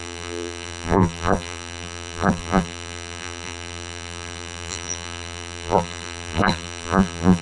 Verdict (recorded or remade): remade